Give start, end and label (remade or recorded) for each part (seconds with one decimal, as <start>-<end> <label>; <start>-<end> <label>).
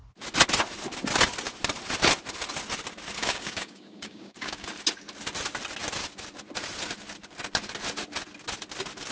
0.0-3.2 recorded; 3.2-4.7 remade; 4.7-9.1 recorded